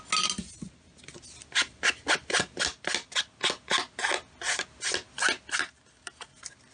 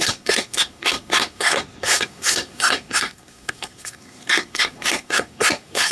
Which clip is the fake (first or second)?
second